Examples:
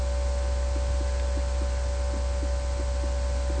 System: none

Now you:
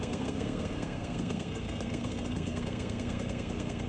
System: codec, SNAC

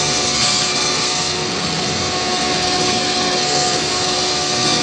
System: codec, SNAC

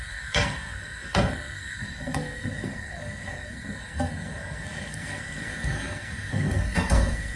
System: codec, SNAC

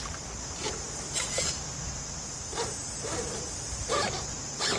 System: none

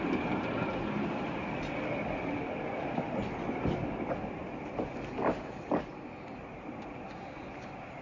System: none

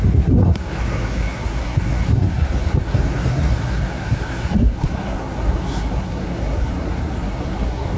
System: codec, SNAC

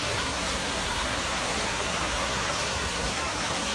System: codec, SNAC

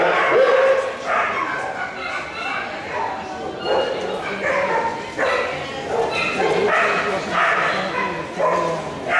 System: none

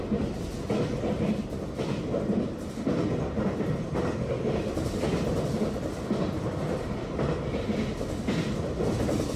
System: none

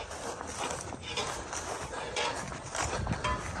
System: none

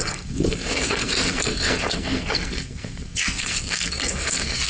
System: codec, SNAC